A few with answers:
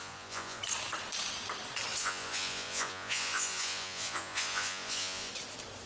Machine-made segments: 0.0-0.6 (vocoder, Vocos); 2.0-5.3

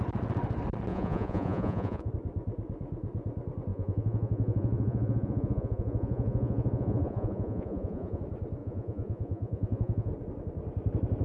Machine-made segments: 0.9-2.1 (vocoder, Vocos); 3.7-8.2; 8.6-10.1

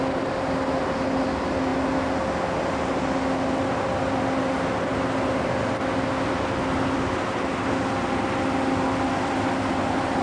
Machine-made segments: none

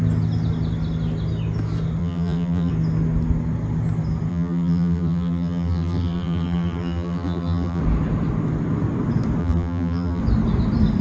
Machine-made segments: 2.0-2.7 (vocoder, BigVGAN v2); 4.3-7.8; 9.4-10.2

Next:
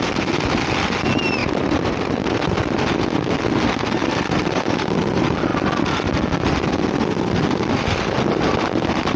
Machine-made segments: 1.4-2.3 (vocoder, BigVGAN v2)

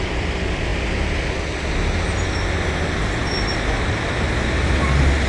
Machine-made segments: 3.0-4.6 (vocoder, BigVGAN v2)

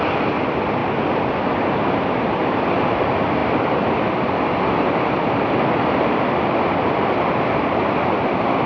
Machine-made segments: 0.0-0.8 (vocoder, BigVGAN v2); 1.4-8.7